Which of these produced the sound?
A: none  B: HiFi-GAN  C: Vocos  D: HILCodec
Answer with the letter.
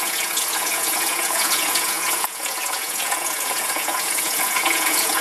C